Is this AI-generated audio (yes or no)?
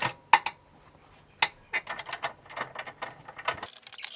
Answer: no